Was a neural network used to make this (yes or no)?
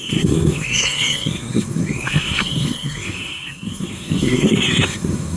yes